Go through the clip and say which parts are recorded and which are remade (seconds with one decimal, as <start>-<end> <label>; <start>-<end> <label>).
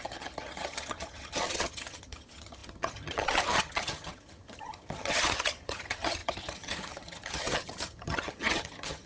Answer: 0.0-9.1 remade